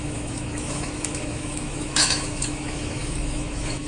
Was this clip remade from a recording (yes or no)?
yes